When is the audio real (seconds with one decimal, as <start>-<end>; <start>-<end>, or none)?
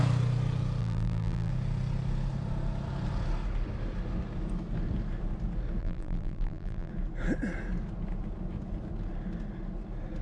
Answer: 0.0-0.8; 1.5-5.8; 6.9-10.2